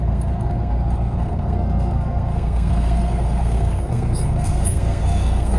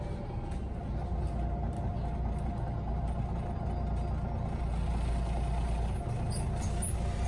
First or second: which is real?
second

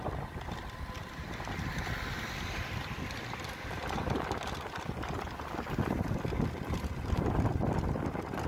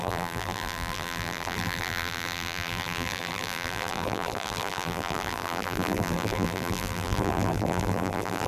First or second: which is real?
first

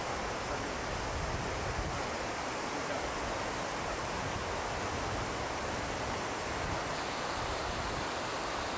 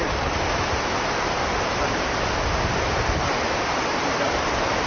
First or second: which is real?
first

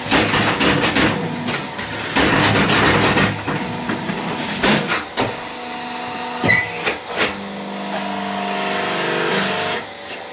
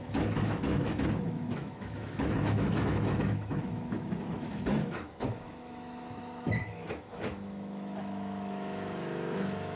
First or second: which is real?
first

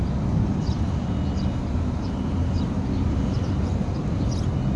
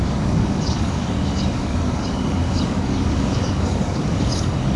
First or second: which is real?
first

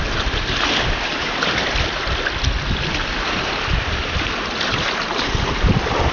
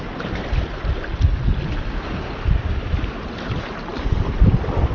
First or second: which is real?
second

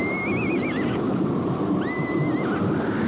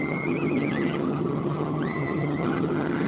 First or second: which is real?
first